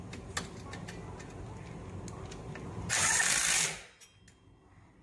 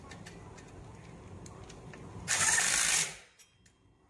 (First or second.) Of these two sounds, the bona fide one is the first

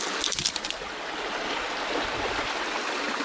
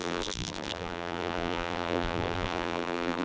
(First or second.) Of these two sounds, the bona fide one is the first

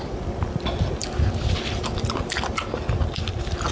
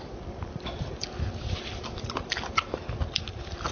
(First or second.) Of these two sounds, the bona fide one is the first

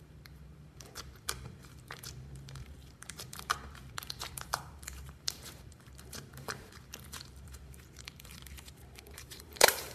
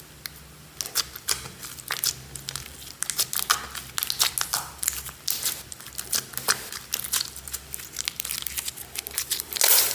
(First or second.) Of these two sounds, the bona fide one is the second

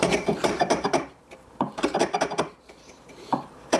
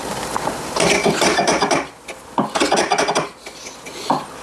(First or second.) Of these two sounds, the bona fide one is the second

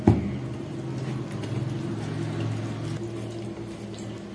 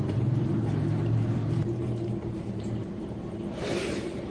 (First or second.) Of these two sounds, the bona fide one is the first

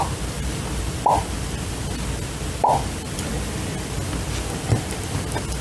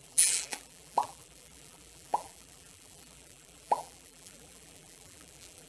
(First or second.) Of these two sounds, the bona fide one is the first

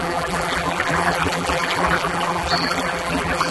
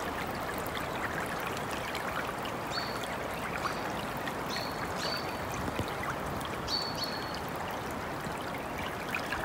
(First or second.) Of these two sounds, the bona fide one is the second